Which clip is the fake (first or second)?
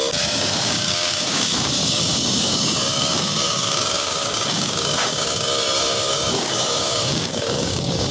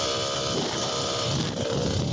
first